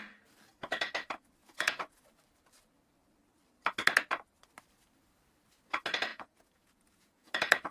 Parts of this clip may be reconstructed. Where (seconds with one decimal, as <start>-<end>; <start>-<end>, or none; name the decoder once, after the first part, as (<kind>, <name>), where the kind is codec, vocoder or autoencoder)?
1.4-2.0 (vocoder, Vocos); 6.1-7.3